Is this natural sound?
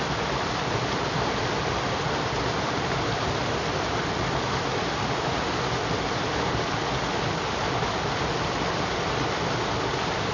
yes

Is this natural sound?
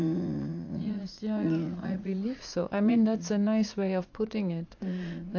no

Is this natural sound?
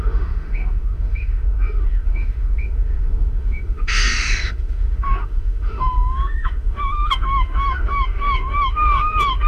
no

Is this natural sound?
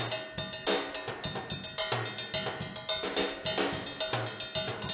yes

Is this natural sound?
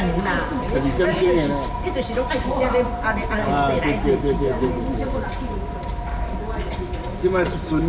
yes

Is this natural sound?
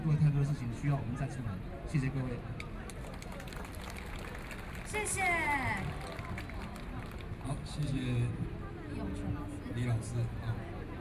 yes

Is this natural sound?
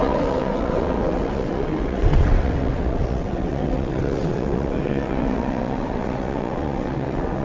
no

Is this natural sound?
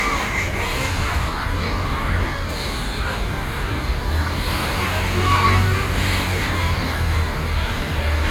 no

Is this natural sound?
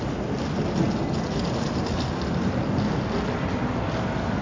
yes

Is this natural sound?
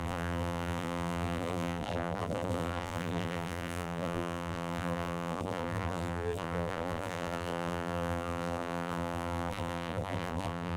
no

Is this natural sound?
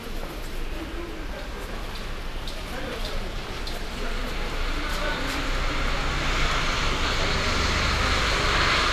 yes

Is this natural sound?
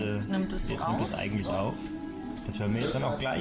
yes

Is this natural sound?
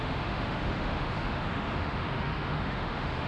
no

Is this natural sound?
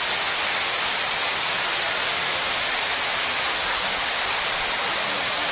yes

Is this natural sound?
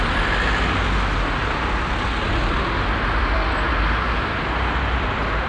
yes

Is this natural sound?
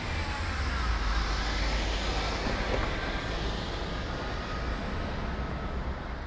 yes